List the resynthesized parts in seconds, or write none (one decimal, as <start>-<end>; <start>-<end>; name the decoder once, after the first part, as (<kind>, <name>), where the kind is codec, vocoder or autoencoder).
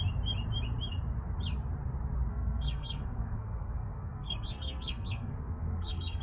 2.3-6.2 (codec, SNAC)